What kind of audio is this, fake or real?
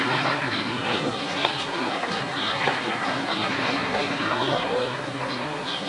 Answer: fake